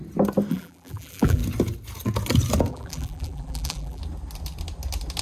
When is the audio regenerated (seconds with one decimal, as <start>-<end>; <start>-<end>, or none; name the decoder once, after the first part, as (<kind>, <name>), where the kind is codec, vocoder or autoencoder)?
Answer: 0.5-1.4 (vocoder, BigVGAN v2); 2.7-4.0